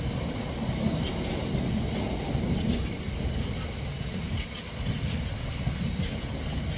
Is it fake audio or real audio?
real